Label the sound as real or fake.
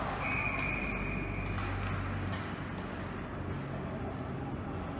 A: real